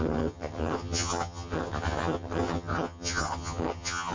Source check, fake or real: fake